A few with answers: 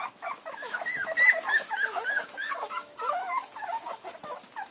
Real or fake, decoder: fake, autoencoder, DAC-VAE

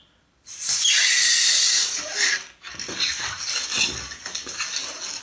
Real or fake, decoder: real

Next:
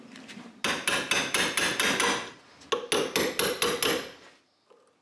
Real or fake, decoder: real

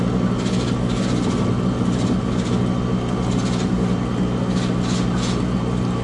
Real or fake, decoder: real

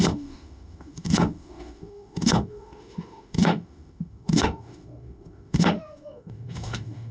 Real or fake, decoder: fake, autoencoder, DAC-VAE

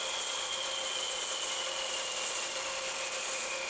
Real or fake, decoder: real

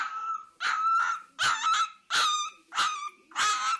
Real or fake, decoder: real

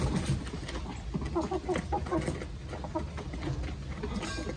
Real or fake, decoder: real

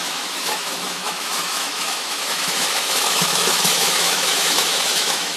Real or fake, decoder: fake, autoencoder, DAC-VAE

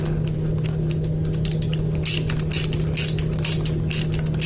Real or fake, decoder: real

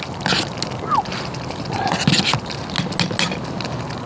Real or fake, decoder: real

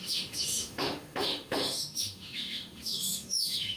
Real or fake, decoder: fake, autoencoder, DAC-VAE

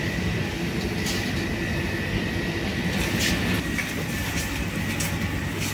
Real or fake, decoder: real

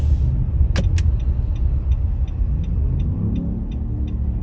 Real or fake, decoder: real